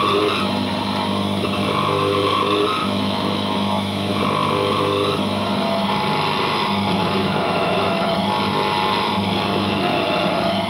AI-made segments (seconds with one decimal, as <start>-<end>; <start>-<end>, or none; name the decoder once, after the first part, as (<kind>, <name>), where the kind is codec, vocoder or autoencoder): 2.8-4.2 (autoencoder, DAC-VAE); 7.0-8.1